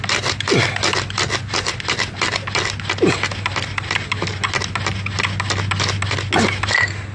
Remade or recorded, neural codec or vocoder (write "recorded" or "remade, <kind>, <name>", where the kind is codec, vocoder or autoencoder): recorded